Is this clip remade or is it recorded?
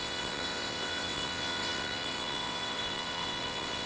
remade